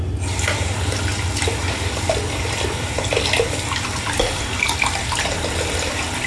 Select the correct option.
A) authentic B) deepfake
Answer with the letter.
A